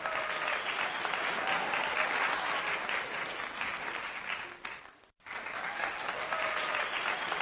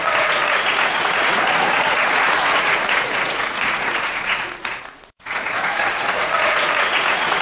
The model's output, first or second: second